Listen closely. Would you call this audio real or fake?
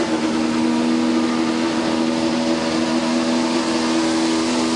real